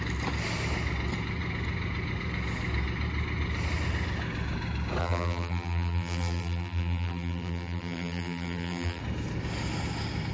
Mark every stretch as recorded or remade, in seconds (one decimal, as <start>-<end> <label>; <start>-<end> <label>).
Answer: 0.0-5.0 recorded; 5.0-9.0 remade; 9.0-10.3 recorded